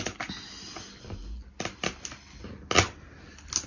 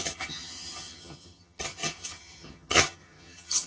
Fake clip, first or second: second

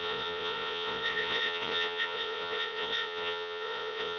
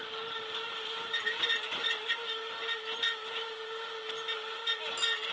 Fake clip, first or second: first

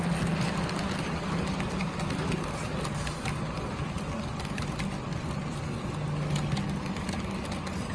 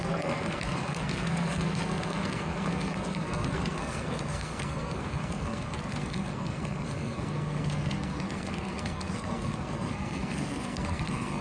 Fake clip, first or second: second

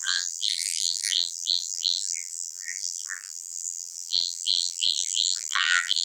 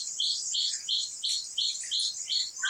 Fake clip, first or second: first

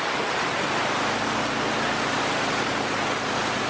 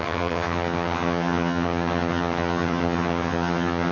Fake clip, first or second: second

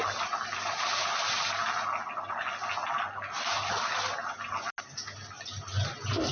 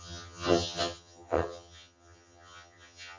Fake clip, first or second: second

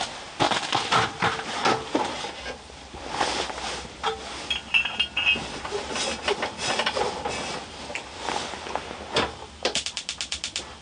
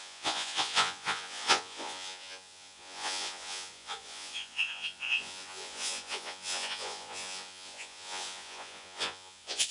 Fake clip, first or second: second